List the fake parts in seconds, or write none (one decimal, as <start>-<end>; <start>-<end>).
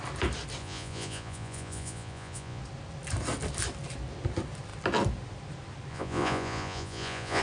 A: 0.6-2.6; 5.9-7.4